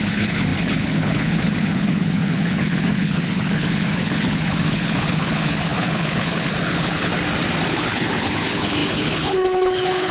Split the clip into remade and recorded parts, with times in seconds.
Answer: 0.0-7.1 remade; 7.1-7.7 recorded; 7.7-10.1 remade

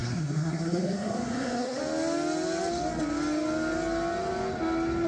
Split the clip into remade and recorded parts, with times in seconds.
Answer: 0.0-1.8 remade; 1.8-5.1 recorded

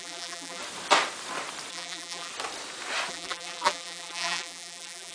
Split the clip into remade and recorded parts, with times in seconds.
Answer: 0.0-0.6 remade; 0.6-1.7 recorded; 1.7-2.3 remade; 2.3-3.1 recorded; 3.1-5.1 remade

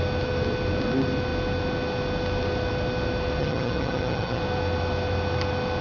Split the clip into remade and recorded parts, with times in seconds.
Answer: 0.0-3.4 recorded; 3.4-4.4 remade; 4.4-5.8 recorded

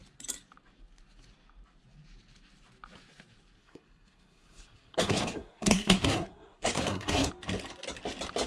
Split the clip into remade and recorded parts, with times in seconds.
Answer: 0.0-3.6 recorded; 3.6-7.3 remade; 7.3-8.5 recorded

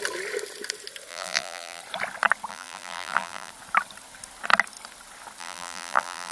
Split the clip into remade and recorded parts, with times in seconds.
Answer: 0.0-1.1 recorded; 1.1-1.8 remade; 1.8-2.5 recorded; 2.5-3.5 remade; 3.5-5.4 recorded; 5.4-6.3 remade

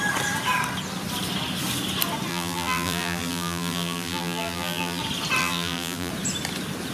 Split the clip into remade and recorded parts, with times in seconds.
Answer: 0.0-2.3 recorded; 2.3-5.0 remade; 5.0-5.4 recorded; 5.4-6.1 remade; 6.1-6.9 recorded

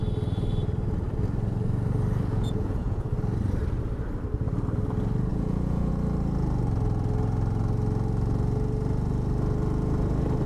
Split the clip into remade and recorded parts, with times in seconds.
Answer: 0.0-2.3 recorded; 2.3-3.1 remade; 3.1-5.3 recorded; 5.3-5.9 remade; 5.9-10.5 recorded